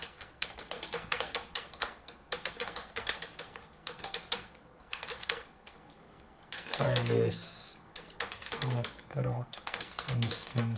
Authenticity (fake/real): fake